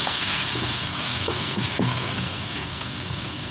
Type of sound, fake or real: fake